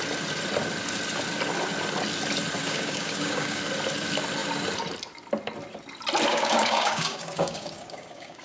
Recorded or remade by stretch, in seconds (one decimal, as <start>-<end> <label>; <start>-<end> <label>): 0.0-2.6 recorded; 2.6-3.6 remade; 3.6-6.3 recorded; 6.3-8.4 remade

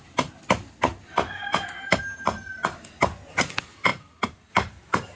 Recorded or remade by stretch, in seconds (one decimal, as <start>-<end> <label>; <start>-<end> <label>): 0.0-5.2 recorded

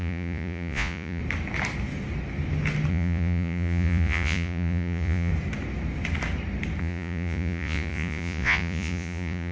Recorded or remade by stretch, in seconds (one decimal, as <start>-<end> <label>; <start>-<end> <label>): 0.0-1.2 remade; 1.2-2.9 recorded; 2.9-5.3 remade; 5.3-6.8 recorded; 6.8-9.5 remade

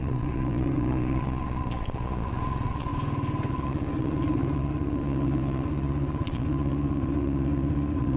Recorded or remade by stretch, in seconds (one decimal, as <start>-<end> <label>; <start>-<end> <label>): 0.0-2.9 remade; 2.9-3.5 recorded; 3.5-8.2 remade

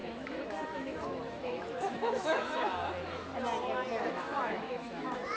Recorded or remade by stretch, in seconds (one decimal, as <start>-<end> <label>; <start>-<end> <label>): 0.0-2.7 remade; 2.7-4.0 recorded; 4.0-5.4 remade